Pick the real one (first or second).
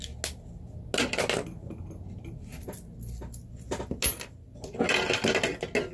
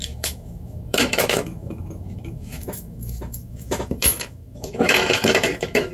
first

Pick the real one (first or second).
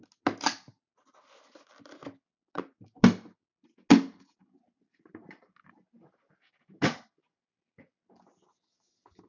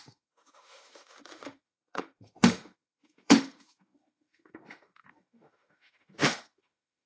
first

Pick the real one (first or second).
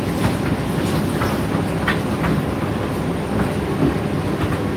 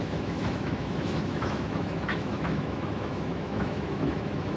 first